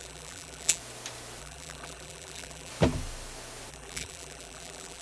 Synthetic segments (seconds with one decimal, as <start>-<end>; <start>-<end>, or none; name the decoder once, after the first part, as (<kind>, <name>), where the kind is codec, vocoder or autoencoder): 0.0-0.8 (vocoder, BigVGAN v2); 1.4-2.7; 3.7-5.0